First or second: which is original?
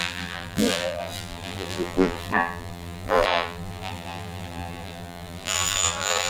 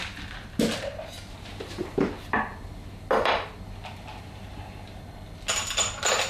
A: second